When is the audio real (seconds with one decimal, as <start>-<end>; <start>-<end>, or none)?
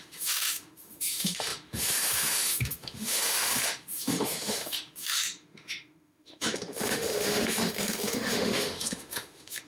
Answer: none